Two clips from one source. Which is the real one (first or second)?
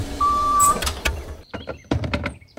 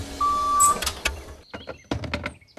second